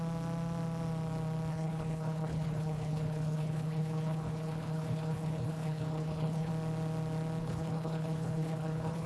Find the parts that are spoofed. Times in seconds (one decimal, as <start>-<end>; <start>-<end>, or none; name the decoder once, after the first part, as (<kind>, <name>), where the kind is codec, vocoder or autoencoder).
1.5-6.5 (codec, HILCodec); 7.4-9.1